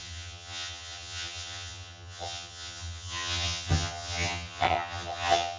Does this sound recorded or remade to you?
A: remade